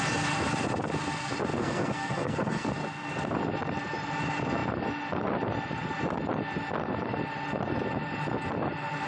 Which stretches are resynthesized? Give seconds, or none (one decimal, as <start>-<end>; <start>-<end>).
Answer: 1.6-2.7